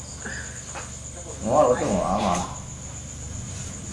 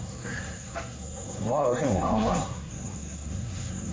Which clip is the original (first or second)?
first